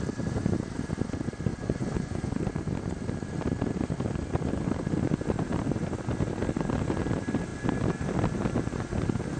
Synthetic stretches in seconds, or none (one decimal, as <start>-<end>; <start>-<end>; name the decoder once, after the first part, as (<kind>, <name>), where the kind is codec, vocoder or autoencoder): 1.5-2.4 (vocoder, Vocos)